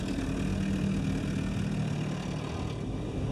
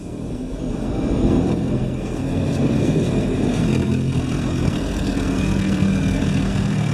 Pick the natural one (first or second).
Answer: first